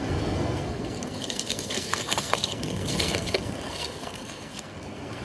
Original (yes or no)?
no